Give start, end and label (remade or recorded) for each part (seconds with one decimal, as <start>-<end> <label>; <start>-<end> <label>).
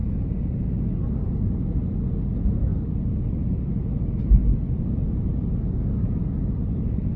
0.0-0.7 remade; 0.7-2.7 recorded; 2.7-3.8 remade; 3.8-4.4 recorded; 4.4-7.2 remade